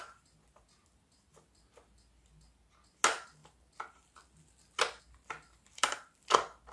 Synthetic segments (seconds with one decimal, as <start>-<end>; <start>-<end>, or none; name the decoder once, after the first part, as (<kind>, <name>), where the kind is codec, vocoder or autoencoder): none